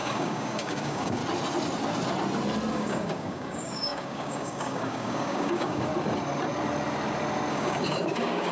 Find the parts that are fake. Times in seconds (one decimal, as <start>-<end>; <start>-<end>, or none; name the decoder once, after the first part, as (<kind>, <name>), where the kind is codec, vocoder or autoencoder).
0.0-1.2 (codec, DAC); 2.7-5.9; 7.5-8.5